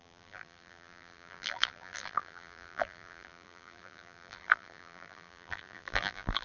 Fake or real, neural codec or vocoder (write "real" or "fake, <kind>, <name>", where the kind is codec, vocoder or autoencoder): fake, vocoder, BigVGAN v2